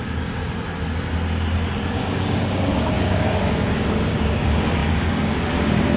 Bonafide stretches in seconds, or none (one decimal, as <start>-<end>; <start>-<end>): 0.4-1.9